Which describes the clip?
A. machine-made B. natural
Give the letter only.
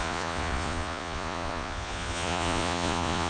A